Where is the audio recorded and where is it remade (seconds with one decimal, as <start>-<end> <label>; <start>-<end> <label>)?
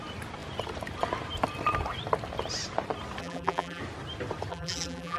0.0-3.2 recorded; 3.2-3.8 remade; 3.8-4.5 recorded; 4.5-5.2 remade